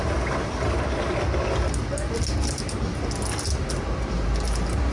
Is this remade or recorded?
recorded